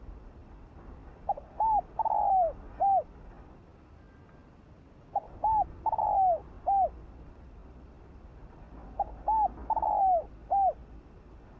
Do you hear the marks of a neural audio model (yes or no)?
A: no